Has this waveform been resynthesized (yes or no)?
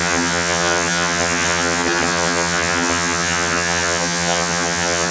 yes